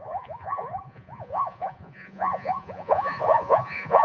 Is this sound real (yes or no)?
no